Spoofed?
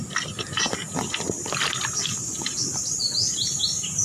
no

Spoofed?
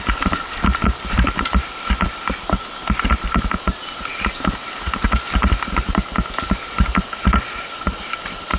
no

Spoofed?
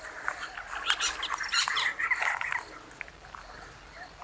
no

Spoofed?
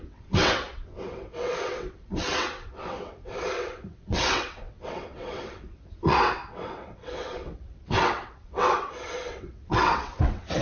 yes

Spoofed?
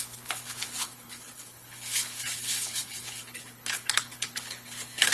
yes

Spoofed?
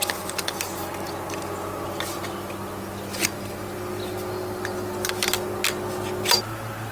no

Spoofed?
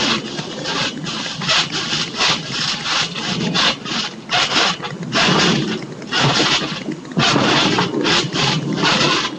no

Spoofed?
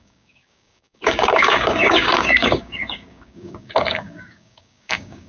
yes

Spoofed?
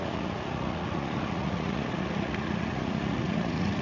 yes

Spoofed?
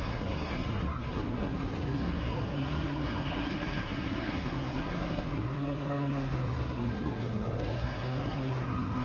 yes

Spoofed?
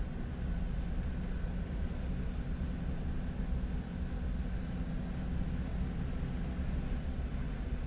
no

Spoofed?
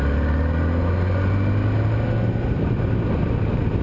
no